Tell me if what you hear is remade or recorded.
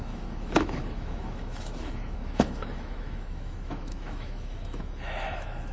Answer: remade